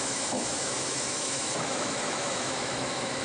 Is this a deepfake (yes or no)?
yes